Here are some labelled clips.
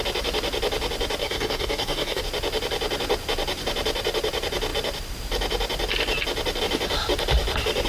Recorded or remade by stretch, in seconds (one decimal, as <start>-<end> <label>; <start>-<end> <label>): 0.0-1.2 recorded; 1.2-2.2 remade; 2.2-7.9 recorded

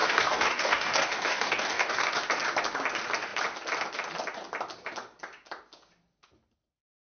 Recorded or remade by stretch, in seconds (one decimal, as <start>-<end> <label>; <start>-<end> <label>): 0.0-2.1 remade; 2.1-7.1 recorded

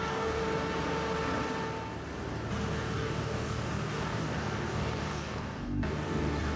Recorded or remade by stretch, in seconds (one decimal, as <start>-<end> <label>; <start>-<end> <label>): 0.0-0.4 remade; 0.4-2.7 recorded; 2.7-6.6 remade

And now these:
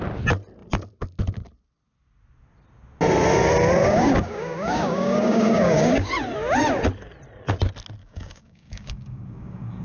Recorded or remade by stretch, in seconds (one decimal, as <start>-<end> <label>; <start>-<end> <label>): 0.0-3.8 recorded; 3.8-6.1 remade; 6.1-8.0 recorded; 8.0-9.8 remade

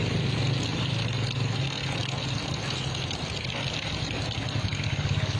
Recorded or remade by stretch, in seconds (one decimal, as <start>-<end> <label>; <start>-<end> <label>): 0.0-4.7 recorded; 4.7-5.4 remade

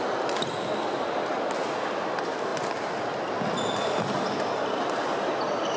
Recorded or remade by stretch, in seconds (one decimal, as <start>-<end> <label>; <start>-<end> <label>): 0.0-5.8 recorded

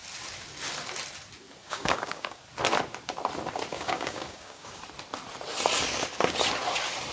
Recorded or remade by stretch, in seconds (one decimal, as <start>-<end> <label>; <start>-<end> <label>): 0.0-1.6 recorded; 1.6-2.4 remade; 2.4-3.7 recorded; 3.7-4.8 remade; 4.8-7.1 recorded